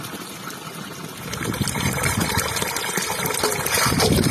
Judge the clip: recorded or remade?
recorded